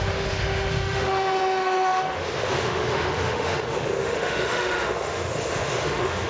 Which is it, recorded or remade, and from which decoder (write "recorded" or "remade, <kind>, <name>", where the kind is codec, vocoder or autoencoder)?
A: remade, autoencoder, DAC-VAE